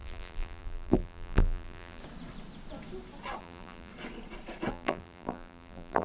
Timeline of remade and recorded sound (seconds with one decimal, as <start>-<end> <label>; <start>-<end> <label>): 0.0-2.0 remade; 2.0-3.4 recorded; 3.4-3.9 remade; 3.9-4.7 recorded; 4.7-6.0 remade